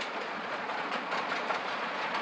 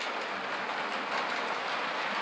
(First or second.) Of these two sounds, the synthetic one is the first